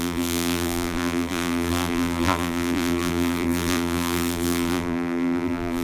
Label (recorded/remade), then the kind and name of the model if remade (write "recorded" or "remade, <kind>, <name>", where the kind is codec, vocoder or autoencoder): remade, vocoder, BigVGAN v2